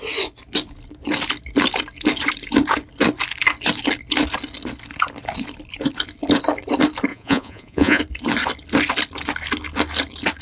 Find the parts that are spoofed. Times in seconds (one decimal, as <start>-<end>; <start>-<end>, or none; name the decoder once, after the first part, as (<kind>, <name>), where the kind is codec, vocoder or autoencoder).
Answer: 7.1-8.0 (vocoder, Vocos)